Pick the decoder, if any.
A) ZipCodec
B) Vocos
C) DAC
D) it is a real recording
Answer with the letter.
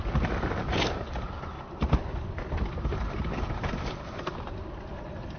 D